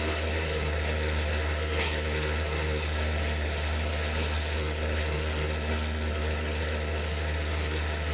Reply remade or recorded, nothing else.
remade